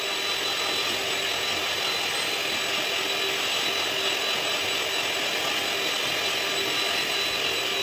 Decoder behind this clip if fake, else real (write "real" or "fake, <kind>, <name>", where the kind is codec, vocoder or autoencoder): real